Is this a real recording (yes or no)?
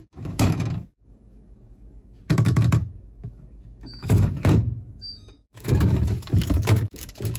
no